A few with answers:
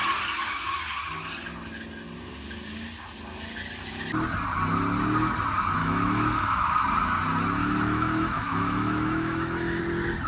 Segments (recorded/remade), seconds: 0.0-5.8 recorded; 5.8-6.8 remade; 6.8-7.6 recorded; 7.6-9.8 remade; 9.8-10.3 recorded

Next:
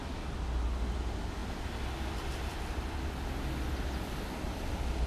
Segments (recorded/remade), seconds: 0.0-5.1 recorded

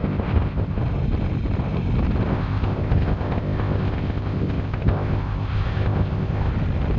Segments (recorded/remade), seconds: 0.0-0.8 remade; 0.8-2.3 recorded; 2.3-6.5 remade; 6.5-7.0 recorded